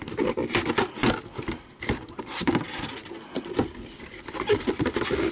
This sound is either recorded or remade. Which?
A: recorded